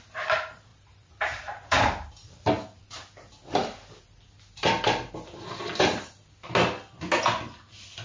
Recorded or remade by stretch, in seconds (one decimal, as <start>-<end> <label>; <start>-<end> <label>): 0.0-0.7 recorded; 0.7-2.1 remade; 2.1-8.0 recorded